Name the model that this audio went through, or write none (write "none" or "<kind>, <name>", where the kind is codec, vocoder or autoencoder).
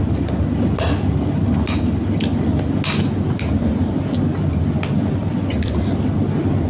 none